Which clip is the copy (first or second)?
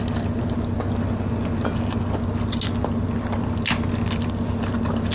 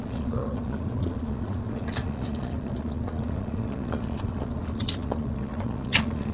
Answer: second